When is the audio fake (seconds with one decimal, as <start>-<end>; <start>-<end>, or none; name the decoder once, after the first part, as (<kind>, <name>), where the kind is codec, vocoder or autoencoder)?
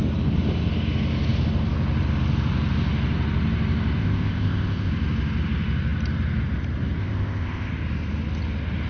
4.0-4.9 (codec, ZipCodec); 7.0-7.7